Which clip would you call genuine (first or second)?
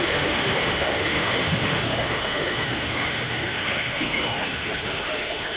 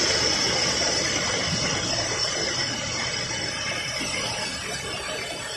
second